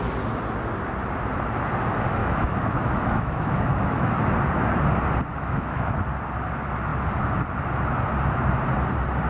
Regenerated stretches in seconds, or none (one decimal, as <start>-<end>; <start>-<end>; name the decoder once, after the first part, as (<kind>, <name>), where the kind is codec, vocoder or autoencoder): 2.2-4.1 (autoencoder, DAC-VAE); 5.3-5.9

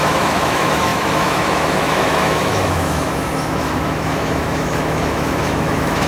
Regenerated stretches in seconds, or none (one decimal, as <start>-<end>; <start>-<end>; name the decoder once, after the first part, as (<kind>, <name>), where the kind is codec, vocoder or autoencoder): 0.0-6.1 (autoencoder, DAC-VAE)

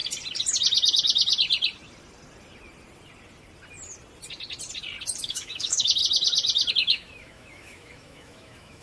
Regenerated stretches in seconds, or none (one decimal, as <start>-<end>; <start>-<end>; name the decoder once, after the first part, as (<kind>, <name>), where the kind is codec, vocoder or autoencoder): 5.2-6.0 (autoencoder, DAC-VAE); 6.7-8.8

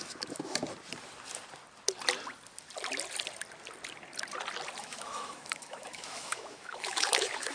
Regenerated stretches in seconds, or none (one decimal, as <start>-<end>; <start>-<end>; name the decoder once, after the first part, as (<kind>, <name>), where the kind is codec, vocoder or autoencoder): 0.0-0.6 (autoencoder, DAC-VAE); 4.8-7.5